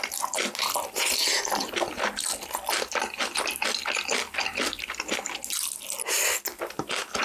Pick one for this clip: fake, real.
real